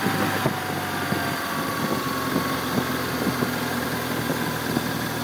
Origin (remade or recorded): recorded